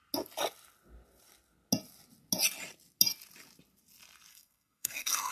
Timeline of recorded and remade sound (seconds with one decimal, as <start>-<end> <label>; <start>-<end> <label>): 0.0-4.3 recorded; 4.3-5.3 remade